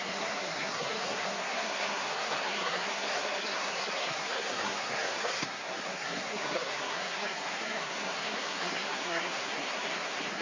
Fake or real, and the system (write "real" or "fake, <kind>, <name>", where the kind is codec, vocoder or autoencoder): fake, codec, SNAC